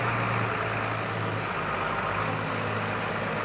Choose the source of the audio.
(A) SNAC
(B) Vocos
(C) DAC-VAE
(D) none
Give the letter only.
D